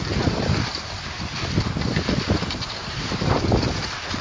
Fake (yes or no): no